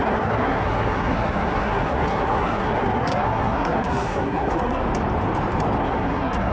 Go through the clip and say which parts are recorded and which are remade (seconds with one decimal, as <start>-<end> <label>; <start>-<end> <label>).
0.0-4.8 remade; 4.8-5.8 recorded; 5.8-6.5 remade